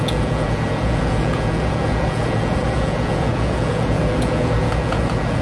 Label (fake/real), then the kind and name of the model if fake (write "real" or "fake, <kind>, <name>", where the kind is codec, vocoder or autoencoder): fake, vocoder, Vocos